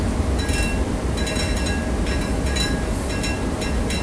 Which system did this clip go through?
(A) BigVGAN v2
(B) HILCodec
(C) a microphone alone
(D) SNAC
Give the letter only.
C